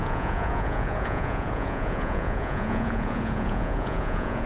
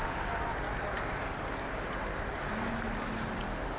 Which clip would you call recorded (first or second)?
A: second